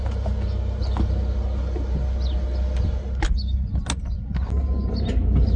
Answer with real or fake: real